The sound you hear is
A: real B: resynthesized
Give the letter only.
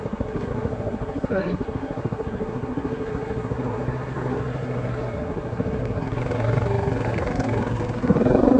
B